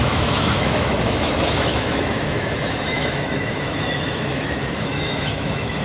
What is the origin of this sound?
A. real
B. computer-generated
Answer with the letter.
B